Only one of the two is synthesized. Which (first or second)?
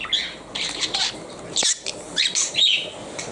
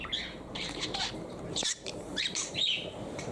second